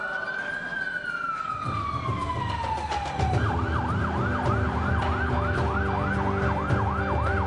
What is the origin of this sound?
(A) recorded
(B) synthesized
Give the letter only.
A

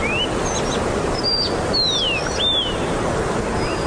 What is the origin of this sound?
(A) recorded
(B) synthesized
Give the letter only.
A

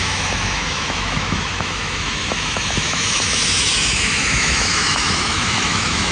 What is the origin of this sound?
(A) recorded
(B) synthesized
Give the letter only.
B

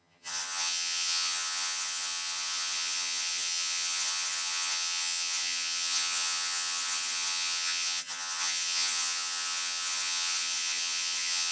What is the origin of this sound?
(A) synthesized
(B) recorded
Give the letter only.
A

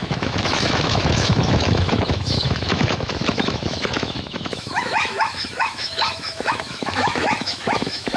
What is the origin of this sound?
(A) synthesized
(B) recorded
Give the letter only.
A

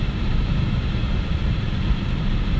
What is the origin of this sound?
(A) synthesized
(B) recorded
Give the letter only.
A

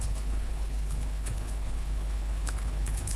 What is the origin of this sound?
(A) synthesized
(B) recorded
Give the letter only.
A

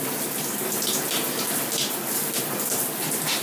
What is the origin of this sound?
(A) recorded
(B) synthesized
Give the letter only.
A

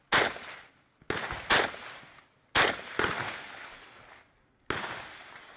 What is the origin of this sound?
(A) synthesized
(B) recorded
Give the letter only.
B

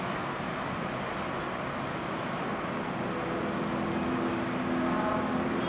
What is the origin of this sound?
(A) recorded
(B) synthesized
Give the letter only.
A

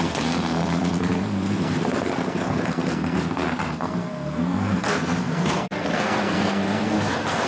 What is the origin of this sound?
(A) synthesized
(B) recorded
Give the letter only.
A